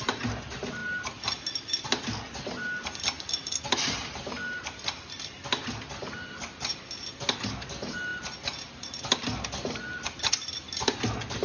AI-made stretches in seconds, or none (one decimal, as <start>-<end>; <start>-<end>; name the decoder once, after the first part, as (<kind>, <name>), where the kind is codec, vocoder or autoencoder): none